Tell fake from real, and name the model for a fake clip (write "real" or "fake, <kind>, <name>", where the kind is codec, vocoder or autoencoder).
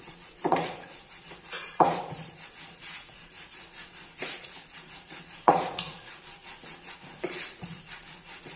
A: fake, vocoder, Vocos